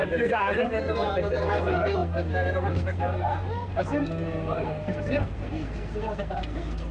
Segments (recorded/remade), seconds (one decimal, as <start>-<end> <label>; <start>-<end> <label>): 0.0-6.9 remade

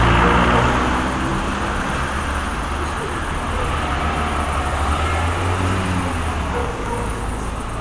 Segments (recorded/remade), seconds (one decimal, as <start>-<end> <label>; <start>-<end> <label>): 0.0-6.6 recorded; 6.6-7.2 remade; 7.2-7.8 recorded